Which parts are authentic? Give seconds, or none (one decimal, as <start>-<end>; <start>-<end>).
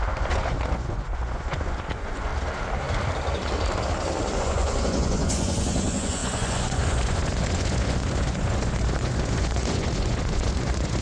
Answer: 2.3-4.4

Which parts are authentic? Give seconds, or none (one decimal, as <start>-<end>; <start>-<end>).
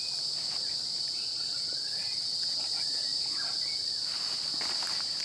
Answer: 0.0-1.3; 2.6-5.2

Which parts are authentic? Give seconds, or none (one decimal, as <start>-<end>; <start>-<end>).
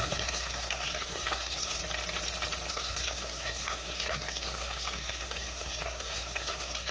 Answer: 1.8-2.7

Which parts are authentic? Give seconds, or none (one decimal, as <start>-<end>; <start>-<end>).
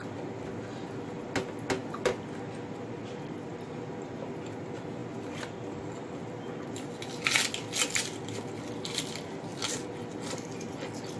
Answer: 0.0-11.2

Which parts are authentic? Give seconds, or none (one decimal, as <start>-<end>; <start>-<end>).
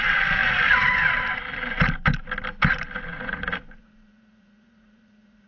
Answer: 0.0-3.1